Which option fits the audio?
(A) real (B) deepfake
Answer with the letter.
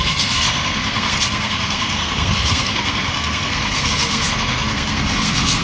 B